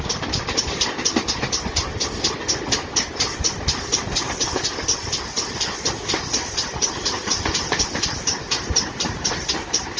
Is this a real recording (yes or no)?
yes